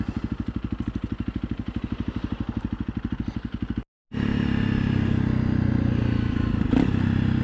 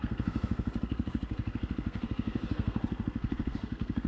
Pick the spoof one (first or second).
second